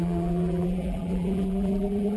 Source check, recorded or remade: remade